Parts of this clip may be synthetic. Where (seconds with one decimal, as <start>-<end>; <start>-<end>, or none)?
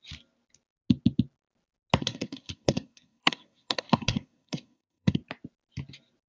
2.0-5.2